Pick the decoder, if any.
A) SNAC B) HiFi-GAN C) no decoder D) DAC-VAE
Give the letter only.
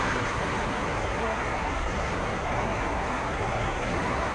A